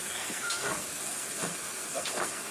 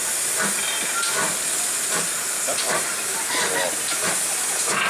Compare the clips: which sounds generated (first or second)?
first